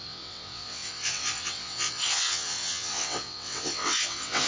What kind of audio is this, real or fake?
fake